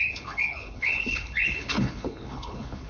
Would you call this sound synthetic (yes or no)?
yes